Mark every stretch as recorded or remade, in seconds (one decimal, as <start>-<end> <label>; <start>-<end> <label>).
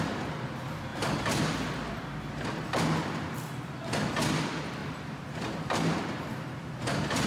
0.0-4.8 recorded; 4.8-6.0 remade; 6.0-7.3 recorded